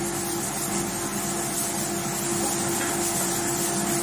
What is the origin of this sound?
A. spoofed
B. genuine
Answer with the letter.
B